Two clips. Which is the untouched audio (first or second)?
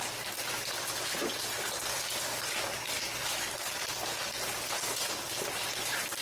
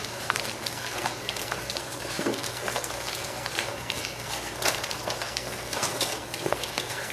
first